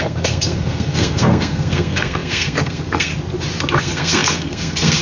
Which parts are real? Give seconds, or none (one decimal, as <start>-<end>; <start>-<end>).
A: 3.1-3.8